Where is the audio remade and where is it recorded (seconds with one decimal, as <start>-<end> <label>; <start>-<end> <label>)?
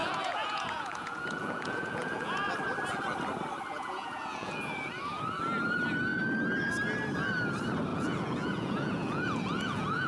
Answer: 0.0-2.5 remade; 2.5-3.7 recorded; 3.7-4.9 remade; 4.9-7.9 recorded; 7.9-10.1 remade